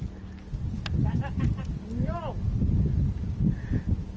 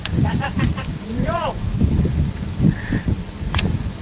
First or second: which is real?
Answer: first